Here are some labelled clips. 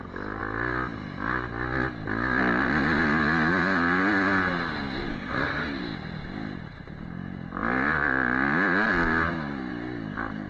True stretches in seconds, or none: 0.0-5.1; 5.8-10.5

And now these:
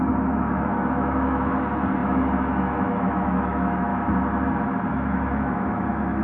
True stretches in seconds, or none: 3.9-4.9

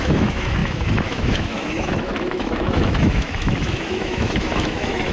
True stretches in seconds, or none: none